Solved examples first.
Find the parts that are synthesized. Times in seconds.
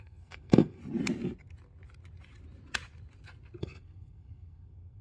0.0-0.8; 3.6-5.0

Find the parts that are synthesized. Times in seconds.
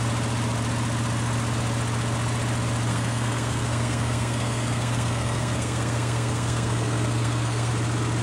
2.9-7.7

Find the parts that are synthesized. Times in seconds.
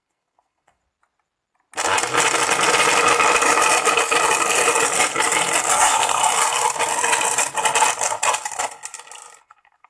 0.0-0.8; 5.7-6.2; 9.4-9.9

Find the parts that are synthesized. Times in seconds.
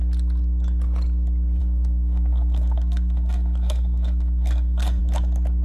1.6-5.0